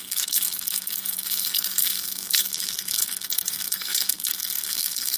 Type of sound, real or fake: fake